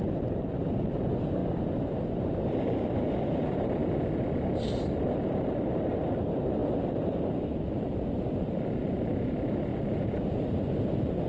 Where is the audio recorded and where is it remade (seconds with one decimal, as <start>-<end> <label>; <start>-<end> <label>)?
0.0-1.4 remade; 1.4-2.5 recorded; 2.5-3.8 remade; 3.8-4.6 recorded; 4.6-11.3 remade

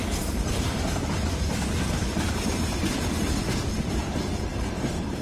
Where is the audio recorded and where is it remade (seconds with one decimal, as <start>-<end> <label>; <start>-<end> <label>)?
0.0-3.0 remade; 3.0-4.5 recorded; 4.5-5.2 remade

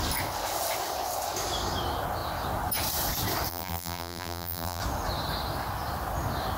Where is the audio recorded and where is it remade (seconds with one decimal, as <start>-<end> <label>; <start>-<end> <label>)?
0.0-3.5 recorded; 3.5-4.8 remade; 4.8-6.6 recorded

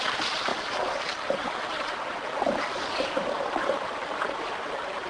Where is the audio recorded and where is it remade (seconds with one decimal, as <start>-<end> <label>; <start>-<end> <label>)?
0.0-5.1 recorded

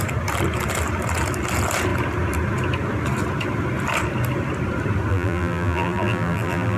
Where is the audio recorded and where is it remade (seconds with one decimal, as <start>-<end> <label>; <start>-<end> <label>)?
0.0-5.1 recorded; 5.1-6.8 remade